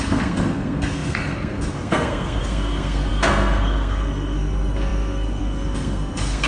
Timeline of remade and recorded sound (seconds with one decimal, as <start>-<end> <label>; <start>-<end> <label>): 0.0-6.5 remade